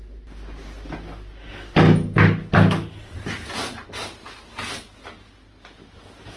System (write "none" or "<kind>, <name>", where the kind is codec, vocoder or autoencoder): none